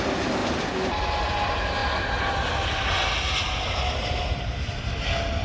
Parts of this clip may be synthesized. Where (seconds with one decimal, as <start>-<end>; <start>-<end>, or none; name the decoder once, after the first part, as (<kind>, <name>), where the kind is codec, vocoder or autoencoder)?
none